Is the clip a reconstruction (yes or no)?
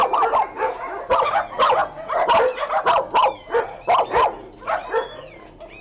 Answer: no